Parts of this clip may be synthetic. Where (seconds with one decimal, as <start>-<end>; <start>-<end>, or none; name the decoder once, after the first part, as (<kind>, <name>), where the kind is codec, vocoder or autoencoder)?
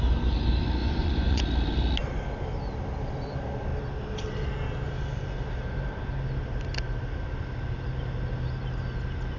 0.8-1.4 (vocoder, Vocos)